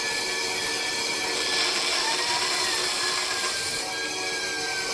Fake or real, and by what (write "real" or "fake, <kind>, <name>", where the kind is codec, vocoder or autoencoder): real